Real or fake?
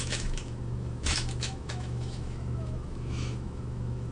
fake